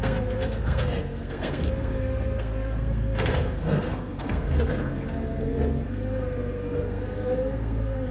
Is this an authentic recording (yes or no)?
no